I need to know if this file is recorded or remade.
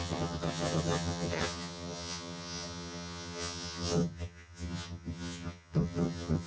remade